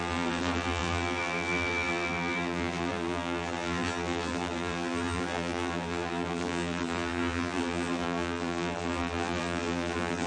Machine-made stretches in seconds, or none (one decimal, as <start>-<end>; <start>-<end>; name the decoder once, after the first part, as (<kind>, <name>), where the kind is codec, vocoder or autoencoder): 0.0-10.3 (vocoder, BigVGAN v2)